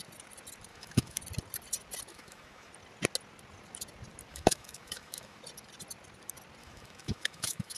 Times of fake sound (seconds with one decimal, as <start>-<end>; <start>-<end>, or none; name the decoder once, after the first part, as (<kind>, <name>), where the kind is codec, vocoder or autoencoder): 0.7-1.2 (autoencoder, DAC-VAE); 2.1-2.7; 4.3-5.4; 6.6-7.8